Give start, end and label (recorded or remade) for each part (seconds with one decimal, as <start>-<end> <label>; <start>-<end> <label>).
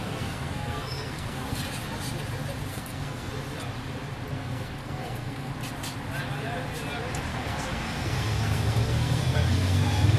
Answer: 0.0-1.6 remade; 1.6-2.7 recorded; 2.7-3.3 remade; 3.3-4.3 recorded; 4.3-5.5 remade; 5.5-7.3 recorded; 7.3-10.2 remade